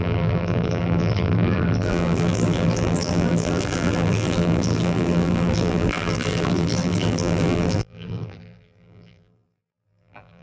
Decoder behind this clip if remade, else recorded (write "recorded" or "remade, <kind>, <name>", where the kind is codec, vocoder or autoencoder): remade, vocoder, BigVGAN v2